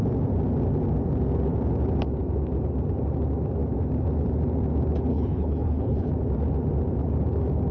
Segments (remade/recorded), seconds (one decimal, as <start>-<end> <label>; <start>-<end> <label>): 0.0-5.1 recorded; 5.1-6.1 remade; 6.1-7.7 recorded